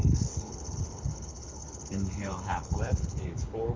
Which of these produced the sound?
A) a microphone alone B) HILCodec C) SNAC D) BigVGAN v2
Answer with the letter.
B